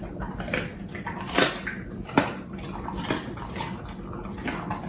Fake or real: real